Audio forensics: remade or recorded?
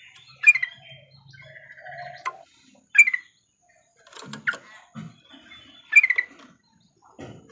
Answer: recorded